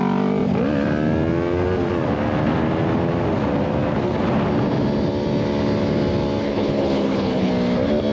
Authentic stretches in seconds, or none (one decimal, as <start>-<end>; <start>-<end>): 0.0-6.4; 7.5-8.1